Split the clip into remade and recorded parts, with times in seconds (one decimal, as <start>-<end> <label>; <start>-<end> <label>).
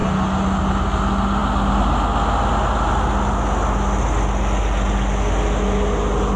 0.0-6.4 recorded